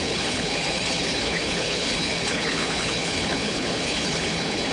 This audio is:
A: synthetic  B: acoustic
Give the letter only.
A